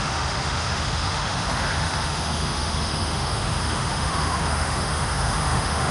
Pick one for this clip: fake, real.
fake